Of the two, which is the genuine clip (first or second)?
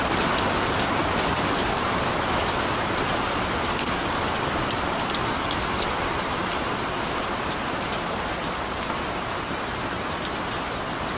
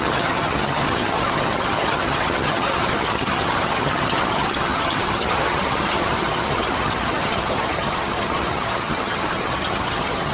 first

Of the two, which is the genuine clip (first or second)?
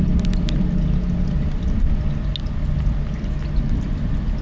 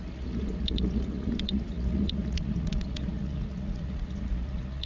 first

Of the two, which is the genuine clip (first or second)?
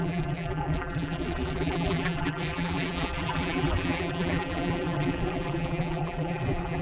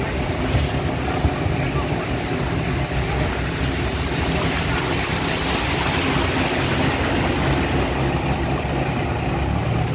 second